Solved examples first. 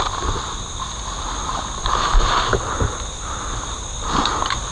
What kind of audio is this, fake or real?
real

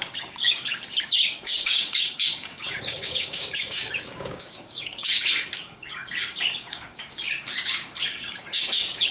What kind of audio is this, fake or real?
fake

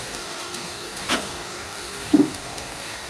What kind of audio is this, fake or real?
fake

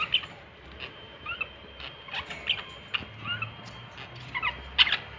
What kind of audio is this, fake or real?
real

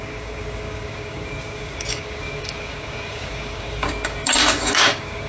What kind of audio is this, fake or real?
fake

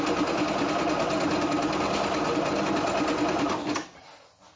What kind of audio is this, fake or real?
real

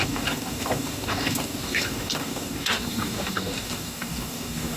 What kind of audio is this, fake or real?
fake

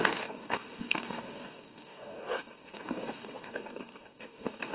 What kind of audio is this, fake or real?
fake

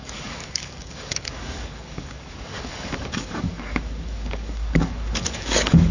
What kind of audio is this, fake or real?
fake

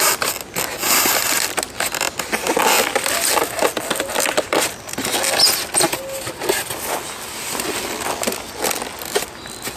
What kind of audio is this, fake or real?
real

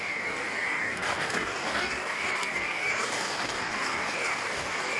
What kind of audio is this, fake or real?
fake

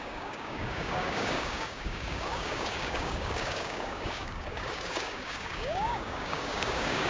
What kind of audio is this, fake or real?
fake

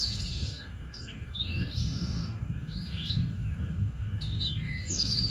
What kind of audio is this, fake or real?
fake